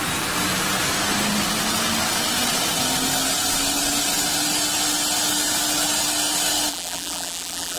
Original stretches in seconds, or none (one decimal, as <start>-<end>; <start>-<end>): 0.0-6.7